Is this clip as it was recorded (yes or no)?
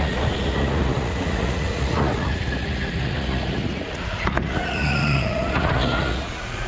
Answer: no